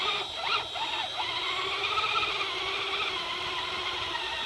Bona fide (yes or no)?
yes